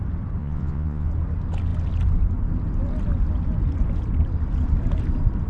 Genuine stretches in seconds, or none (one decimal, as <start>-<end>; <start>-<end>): 0.0-0.4; 1.1-5.5